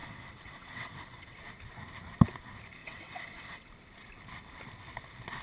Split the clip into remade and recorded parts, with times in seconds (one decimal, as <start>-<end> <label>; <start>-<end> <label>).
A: 0.0-1.4 remade; 1.4-2.8 recorded; 2.8-3.7 remade; 3.7-5.4 recorded